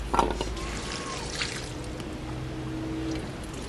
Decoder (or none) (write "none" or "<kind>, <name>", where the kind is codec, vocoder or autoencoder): none